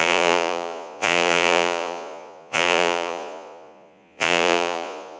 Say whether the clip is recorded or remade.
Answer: remade